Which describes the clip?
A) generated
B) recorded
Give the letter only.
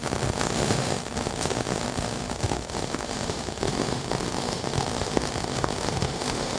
A